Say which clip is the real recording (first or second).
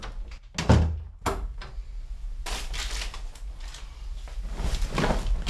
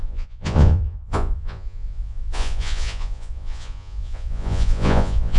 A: first